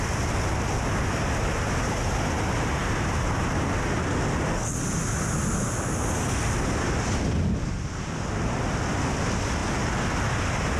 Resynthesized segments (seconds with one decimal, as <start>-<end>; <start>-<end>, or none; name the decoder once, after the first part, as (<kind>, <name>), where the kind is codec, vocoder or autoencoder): none